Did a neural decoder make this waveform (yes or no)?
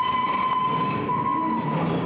no